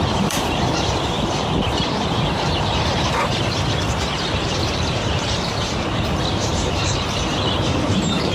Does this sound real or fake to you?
fake